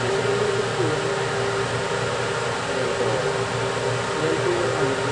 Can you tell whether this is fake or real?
real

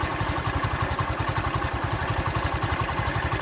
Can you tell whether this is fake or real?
real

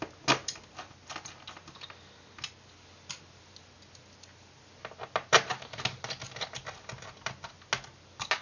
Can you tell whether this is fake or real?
real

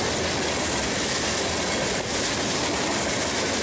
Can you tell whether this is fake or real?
real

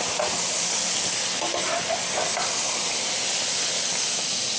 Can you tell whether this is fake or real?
real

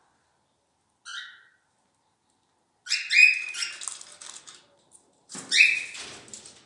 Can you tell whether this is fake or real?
real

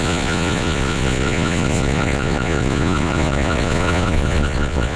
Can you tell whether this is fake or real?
fake